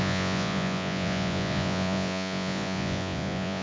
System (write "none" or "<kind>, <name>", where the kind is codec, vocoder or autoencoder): vocoder, Vocos